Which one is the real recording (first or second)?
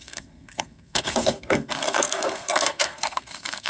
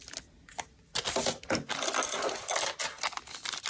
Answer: second